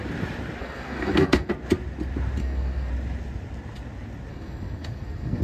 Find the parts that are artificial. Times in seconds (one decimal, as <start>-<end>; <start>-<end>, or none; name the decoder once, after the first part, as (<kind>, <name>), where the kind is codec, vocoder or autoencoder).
0.6-1.5 (codec, SNAC); 2.4-2.9; 4.3-5.4

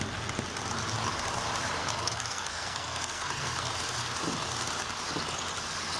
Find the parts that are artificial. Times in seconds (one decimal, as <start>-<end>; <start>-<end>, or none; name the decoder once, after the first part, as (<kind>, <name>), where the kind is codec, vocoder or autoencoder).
1.8-3.7 (codec, SNAC)

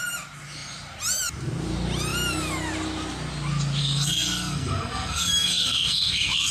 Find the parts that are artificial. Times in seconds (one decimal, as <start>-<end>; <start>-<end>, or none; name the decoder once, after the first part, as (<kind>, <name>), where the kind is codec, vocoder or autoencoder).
3.8-6.5 (codec, SNAC)

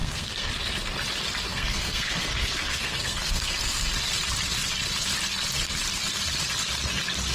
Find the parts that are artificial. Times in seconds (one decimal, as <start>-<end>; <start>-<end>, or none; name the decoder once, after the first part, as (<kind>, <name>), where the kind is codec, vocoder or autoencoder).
0.0-0.5 (codec, SNAC); 1.5-3.9

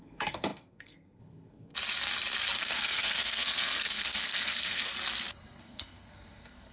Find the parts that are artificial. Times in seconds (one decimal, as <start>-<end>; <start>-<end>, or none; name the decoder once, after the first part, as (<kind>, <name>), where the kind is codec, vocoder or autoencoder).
0.0-1.7 (codec, SNAC); 2.6-4.9; 5.6-6.7

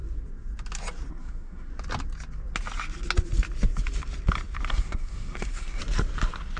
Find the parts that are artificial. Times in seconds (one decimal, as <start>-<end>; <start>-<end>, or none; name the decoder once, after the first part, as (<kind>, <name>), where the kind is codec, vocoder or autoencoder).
1.1-1.7 (codec, SNAC); 4.7-5.8